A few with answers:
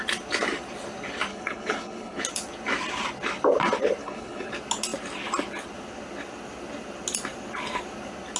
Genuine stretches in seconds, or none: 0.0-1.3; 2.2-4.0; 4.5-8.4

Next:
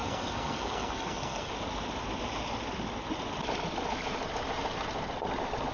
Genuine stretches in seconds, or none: 1.5-5.7